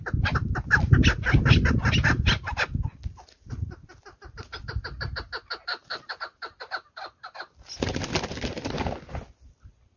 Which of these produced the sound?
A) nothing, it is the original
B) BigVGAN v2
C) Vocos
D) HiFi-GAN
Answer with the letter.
A